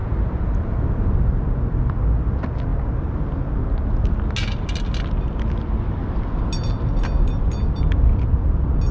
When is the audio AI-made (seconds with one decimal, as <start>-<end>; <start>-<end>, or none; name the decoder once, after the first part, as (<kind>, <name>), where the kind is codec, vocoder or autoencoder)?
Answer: 0.0-0.8 (vocoder, BigVGAN v2)